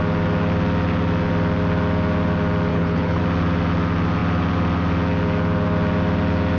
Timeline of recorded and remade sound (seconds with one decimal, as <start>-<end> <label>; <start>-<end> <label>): 0.0-2.7 recorded; 2.7-3.2 remade; 3.2-6.6 recorded